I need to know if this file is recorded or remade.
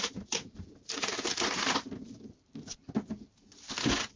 remade